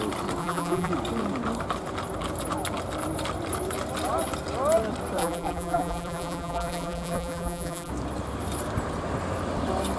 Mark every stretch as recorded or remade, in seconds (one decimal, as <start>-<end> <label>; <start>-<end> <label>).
0.0-0.4 recorded; 0.4-0.9 remade; 0.9-5.2 recorded; 5.2-7.9 remade; 7.9-10.0 recorded